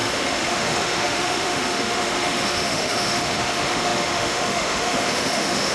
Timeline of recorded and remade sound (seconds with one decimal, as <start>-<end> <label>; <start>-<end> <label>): 0.0-5.7 remade